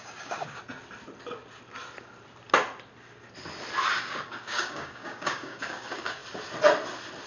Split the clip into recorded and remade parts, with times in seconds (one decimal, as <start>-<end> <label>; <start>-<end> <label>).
0.0-0.6 remade; 0.6-4.0 recorded; 4.0-6.2 remade; 6.2-7.3 recorded